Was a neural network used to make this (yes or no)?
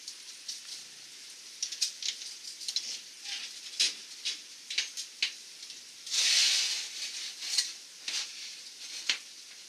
no